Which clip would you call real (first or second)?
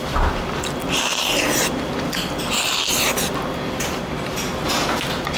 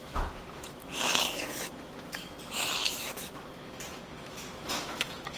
first